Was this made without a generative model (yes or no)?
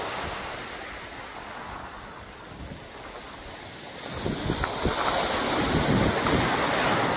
yes